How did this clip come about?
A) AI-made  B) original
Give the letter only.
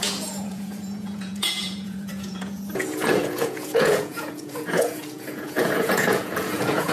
A